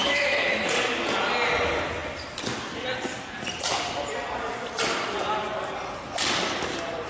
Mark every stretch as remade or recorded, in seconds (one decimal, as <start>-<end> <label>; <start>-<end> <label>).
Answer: 0.0-0.6 remade; 0.6-7.1 recorded